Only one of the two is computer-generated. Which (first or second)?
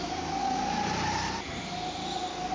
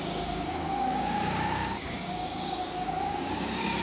second